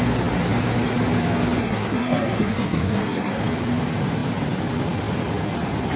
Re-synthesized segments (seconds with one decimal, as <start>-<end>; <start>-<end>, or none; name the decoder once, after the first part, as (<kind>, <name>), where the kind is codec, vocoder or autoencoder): 1.6-3.4 (codec, SNAC)